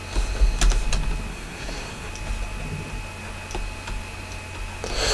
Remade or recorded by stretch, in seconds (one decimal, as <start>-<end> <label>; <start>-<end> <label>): 0.0-1.3 recorded; 1.3-2.1 remade; 2.1-5.1 recorded